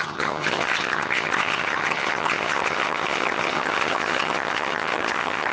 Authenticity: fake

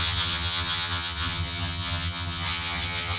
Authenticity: fake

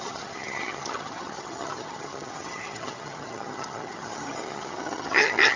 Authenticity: fake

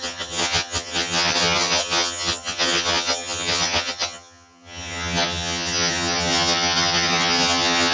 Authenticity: fake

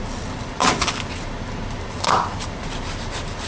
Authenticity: real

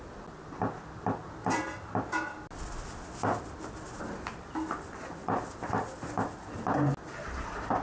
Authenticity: real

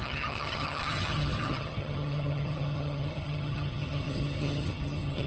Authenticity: fake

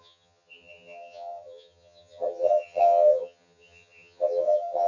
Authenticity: fake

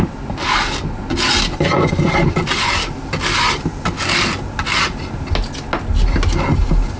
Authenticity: real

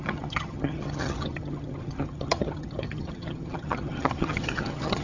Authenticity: fake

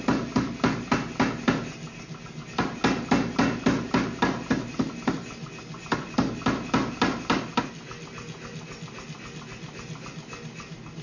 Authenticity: real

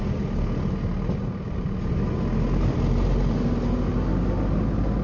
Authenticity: real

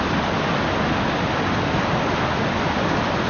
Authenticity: real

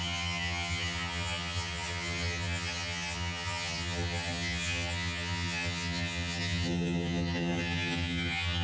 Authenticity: fake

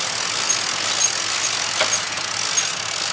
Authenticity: real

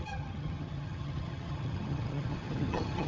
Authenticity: fake